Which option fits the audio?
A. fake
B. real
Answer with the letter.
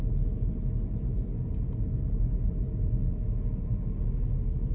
B